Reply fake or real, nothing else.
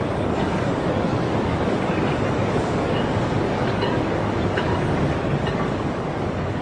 fake